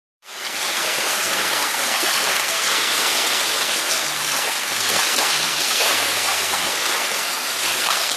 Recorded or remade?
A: remade